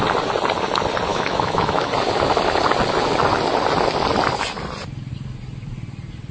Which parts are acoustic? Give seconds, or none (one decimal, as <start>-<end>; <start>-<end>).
0.0-1.1; 1.9-6.3